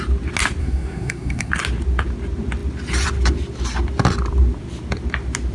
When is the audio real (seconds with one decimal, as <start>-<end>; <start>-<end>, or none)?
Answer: 0.0-0.6; 1.5-5.5